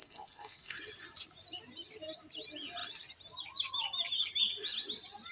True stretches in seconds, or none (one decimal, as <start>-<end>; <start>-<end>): 0.8-5.3